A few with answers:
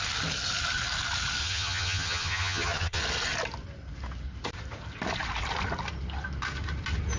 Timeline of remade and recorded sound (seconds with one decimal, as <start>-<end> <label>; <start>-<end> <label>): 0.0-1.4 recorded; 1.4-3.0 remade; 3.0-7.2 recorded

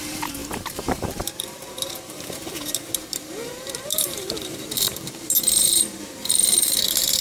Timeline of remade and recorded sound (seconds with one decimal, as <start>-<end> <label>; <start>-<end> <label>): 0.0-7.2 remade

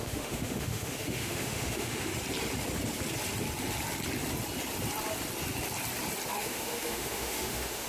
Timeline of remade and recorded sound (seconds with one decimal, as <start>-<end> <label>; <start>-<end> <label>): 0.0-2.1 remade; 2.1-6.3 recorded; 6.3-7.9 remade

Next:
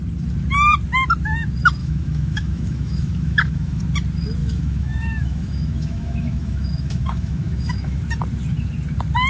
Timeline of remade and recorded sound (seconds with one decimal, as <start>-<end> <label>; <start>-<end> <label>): 0.0-1.8 recorded; 1.8-3.8 remade; 3.8-4.4 recorded; 4.4-8.0 remade; 8.0-9.3 recorded

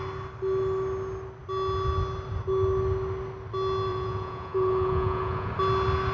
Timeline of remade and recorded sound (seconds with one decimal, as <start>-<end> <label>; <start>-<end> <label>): 0.0-3.9 recorded; 3.9-5.5 remade; 5.5-6.1 recorded